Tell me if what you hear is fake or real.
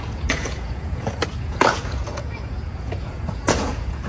fake